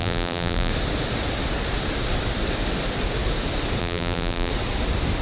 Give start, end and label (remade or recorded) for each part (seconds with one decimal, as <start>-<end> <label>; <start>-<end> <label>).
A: 0.0-0.7 remade; 0.7-3.8 recorded; 3.8-4.5 remade; 4.5-5.2 recorded